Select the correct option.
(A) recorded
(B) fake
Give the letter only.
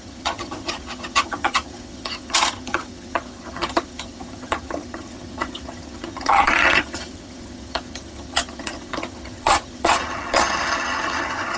B